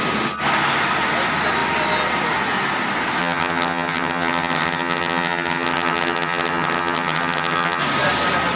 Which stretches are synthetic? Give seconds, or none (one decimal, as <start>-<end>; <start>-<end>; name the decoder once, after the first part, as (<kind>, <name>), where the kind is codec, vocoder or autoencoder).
3.2-7.8 (vocoder, HiFi-GAN)

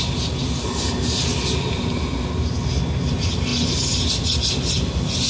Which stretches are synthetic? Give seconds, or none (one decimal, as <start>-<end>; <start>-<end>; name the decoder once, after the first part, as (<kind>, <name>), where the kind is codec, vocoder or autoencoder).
none

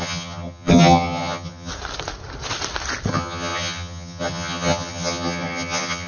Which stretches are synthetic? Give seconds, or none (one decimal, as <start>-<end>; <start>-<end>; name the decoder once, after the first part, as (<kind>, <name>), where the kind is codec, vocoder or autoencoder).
0.0-1.7 (vocoder, HiFi-GAN); 3.1-6.1

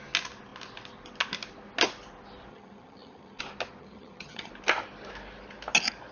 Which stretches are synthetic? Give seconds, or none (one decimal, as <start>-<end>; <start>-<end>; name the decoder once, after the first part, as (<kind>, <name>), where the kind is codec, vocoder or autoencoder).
2.5-3.4 (vocoder, HiFi-GAN); 3.8-4.5

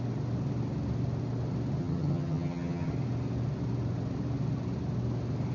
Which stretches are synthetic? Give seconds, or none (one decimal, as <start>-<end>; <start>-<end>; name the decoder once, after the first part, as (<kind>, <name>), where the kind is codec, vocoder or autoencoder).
1.8-2.9 (vocoder, HiFi-GAN)

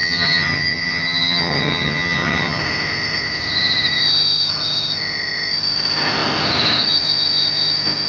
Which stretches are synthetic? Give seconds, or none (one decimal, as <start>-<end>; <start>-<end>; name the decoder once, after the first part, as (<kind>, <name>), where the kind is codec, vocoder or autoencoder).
0.0-2.6 (vocoder, HiFi-GAN)